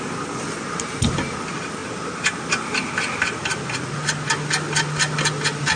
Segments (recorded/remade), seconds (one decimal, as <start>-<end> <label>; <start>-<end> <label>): 0.0-5.8 recorded